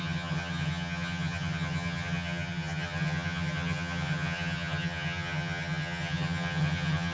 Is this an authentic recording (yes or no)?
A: no